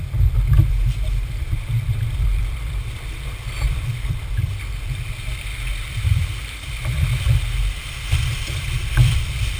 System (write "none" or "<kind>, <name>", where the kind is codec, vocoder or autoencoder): vocoder, BigVGAN v2